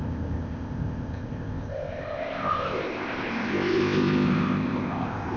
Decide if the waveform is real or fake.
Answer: fake